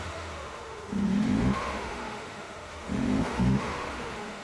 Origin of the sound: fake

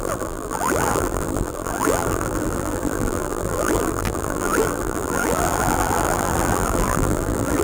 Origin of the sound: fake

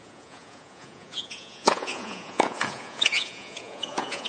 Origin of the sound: fake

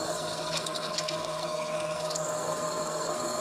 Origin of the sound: fake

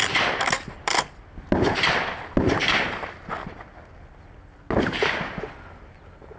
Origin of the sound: real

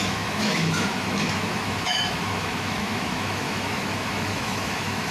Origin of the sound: fake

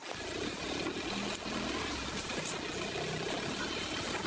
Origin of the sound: real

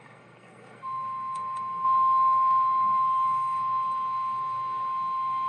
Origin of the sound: fake